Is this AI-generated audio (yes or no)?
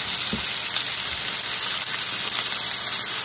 no